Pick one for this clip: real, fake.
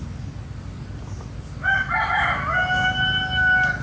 real